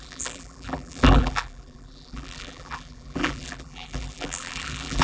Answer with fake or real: fake